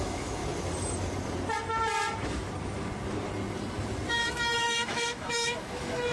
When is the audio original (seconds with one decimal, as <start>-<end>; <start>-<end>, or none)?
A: 0.4-4.1